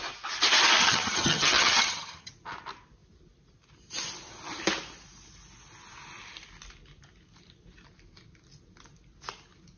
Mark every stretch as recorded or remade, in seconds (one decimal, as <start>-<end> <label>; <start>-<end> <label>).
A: 0.0-0.8 recorded; 0.8-2.3 remade; 2.3-9.8 recorded